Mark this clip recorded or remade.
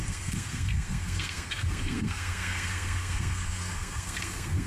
remade